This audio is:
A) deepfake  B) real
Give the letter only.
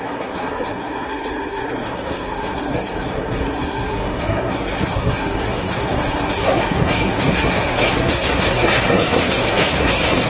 A